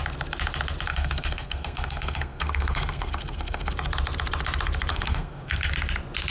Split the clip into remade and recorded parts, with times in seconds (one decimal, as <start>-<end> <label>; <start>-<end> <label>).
0.0-0.9 recorded; 0.9-3.7 remade; 3.7-4.9 recorded; 4.9-5.7 remade; 5.7-6.3 recorded